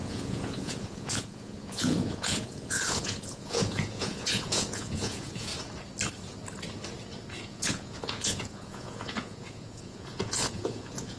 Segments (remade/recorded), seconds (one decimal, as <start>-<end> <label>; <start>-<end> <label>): 0.0-5.5 remade; 5.5-7.4 recorded; 7.4-11.2 remade